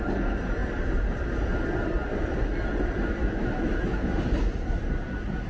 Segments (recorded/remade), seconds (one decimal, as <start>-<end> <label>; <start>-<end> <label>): 0.0-3.2 recorded; 3.2-4.2 remade; 4.2-5.5 recorded